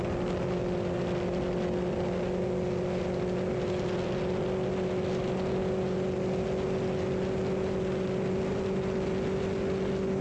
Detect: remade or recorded recorded